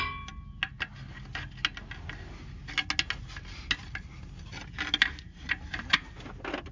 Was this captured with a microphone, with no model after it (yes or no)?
yes